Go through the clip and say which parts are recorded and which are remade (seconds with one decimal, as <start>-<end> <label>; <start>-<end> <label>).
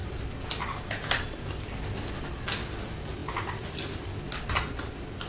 0.0-5.3 recorded